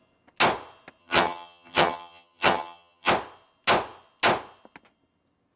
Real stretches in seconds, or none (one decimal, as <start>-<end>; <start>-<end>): 0.0-1.0; 3.1-5.6